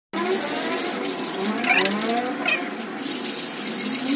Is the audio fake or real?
real